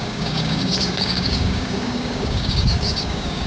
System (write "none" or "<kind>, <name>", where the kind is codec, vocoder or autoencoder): codec, DAC